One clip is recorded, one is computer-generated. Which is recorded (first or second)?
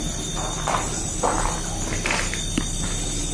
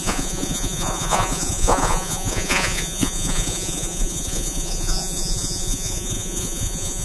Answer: first